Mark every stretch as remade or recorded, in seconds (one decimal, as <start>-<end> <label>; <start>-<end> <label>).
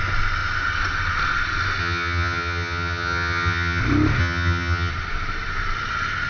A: 0.0-1.8 recorded; 1.8-3.8 remade; 3.8-4.2 recorded; 4.2-4.9 remade; 4.9-6.3 recorded